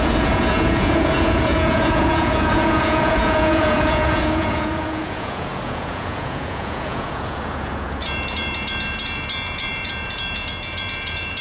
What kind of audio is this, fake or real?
fake